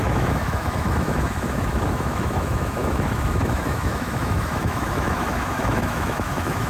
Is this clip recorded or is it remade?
remade